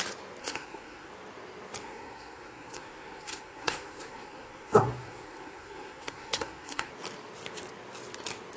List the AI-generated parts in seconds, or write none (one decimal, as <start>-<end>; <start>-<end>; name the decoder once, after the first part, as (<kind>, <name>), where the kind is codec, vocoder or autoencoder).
0.4-1.1 (codec, SNAC); 1.8-6.9